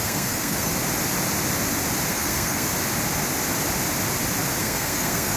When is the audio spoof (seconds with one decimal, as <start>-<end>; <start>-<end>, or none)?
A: 0.0-0.7; 2.1-2.7; 4.6-5.4